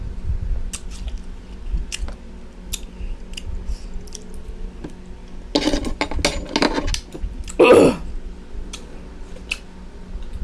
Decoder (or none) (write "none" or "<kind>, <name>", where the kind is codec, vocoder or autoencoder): none